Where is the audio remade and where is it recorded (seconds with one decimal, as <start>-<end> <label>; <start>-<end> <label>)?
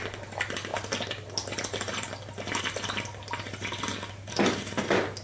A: 0.0-5.2 recorded